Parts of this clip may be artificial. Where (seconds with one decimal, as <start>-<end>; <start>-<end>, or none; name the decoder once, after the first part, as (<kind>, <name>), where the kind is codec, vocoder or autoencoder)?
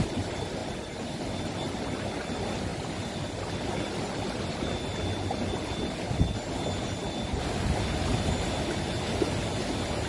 0.6-1.2 (vocoder, BigVGAN v2); 2.7-3.4